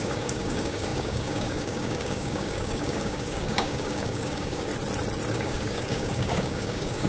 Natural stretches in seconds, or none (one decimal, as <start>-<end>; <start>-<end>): 4.7-5.3